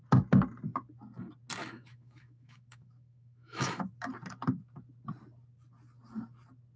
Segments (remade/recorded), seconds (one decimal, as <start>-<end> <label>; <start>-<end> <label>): 0.0-1.6 recorded; 1.6-3.9 remade; 3.9-6.8 recorded